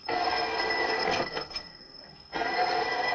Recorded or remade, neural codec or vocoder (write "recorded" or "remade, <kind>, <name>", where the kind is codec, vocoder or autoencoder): remade, codec, SNAC